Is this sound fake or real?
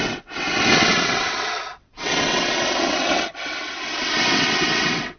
fake